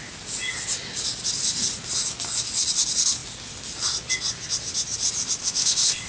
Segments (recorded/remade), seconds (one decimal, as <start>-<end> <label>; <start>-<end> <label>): 0.0-5.4 recorded; 5.4-6.1 remade